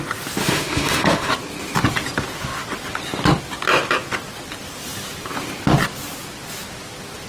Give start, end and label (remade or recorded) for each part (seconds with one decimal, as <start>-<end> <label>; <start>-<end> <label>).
0.0-0.4 recorded; 0.4-1.3 remade; 1.3-7.3 recorded